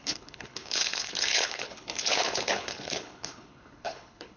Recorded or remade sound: remade